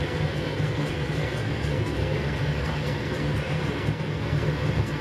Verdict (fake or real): fake